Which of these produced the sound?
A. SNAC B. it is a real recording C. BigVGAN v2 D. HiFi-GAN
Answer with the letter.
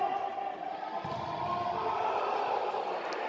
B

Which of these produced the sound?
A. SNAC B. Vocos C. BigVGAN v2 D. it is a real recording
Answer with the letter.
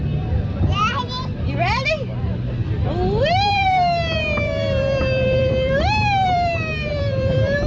C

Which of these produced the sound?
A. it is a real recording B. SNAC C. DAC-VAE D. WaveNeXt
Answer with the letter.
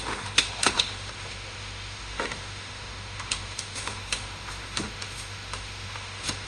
C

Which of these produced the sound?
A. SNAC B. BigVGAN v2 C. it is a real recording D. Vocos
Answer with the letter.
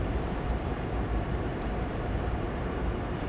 B